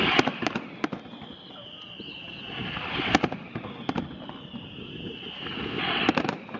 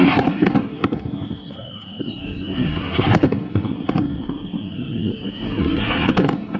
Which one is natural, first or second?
first